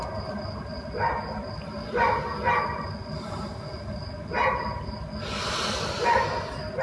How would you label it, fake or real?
real